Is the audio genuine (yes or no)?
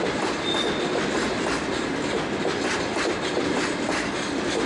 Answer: yes